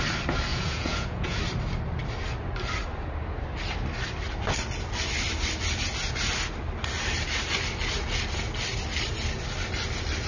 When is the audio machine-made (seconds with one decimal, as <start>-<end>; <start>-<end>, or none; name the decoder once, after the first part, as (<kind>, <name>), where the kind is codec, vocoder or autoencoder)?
0.5-1.4 (vocoder, Vocos)